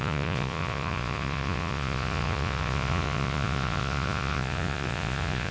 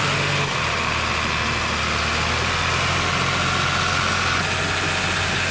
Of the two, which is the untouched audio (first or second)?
second